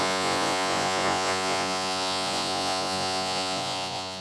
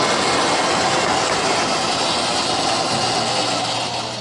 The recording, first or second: second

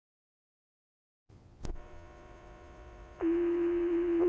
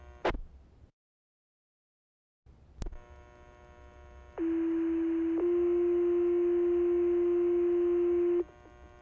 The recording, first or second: second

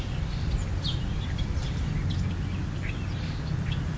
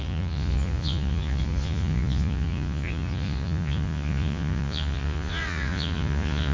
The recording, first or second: first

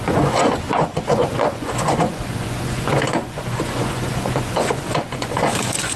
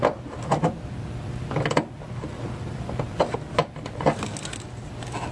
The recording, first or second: second